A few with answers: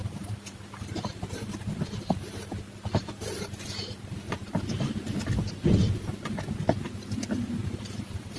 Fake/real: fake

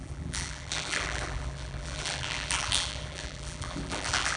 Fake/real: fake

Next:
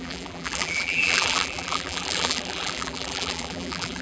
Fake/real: fake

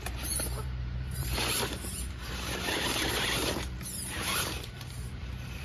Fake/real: fake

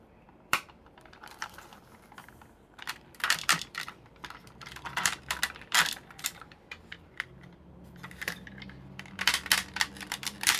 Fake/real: fake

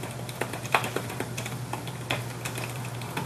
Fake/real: fake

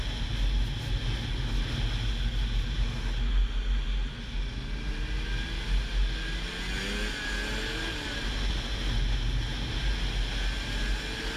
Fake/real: real